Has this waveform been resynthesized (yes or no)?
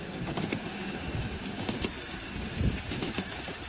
yes